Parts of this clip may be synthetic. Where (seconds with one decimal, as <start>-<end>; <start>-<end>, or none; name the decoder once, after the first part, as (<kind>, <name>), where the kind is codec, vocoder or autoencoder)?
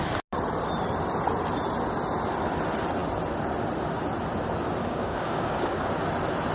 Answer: 4.8-5.9 (codec, DAC)